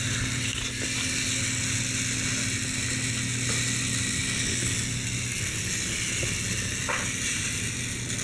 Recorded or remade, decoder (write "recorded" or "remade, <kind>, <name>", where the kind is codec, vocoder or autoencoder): recorded